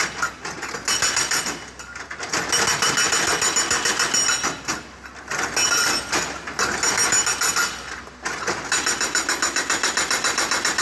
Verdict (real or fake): real